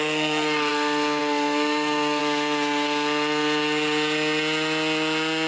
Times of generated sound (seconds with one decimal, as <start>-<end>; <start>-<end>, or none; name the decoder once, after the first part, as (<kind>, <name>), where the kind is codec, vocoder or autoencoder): 0.0-2.2 (codec, SNAC)